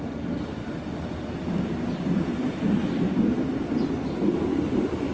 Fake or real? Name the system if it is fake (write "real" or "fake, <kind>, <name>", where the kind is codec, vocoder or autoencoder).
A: real